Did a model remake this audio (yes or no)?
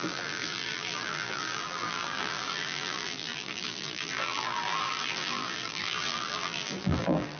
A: yes